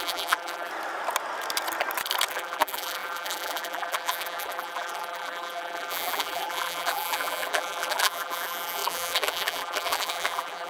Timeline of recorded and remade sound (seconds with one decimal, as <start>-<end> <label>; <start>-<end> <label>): 0.0-0.7 remade; 0.7-2.3 recorded; 2.3-10.7 remade